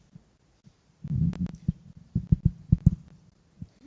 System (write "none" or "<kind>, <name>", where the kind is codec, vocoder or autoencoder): none